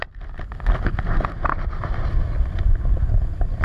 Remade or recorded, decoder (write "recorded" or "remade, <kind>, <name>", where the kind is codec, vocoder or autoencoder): recorded